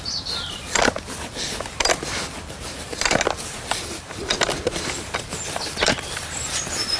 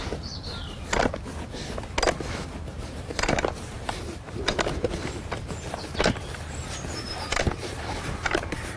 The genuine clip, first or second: second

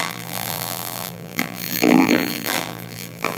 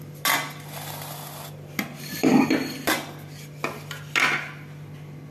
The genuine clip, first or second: second